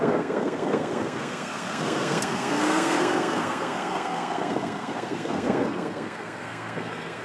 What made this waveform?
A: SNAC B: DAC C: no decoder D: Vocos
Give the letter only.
A